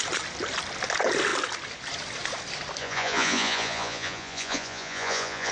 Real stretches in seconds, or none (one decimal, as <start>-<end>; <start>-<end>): 0.0-2.8